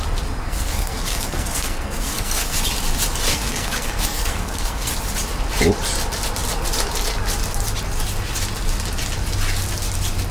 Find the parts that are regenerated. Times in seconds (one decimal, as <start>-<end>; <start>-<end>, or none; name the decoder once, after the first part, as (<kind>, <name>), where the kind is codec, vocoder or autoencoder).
0.4-2.6 (codec, SNAC); 3.3-4.9